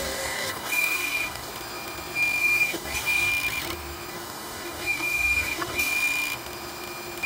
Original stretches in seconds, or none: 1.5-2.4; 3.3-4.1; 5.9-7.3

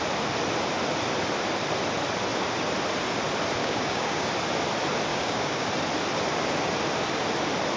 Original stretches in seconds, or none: 0.0-3.6; 4.3-5.1; 5.7-7.8